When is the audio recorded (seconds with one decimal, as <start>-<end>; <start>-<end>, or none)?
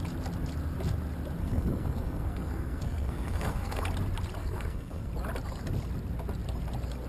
0.0-1.4; 3.8-4.4; 5.1-7.1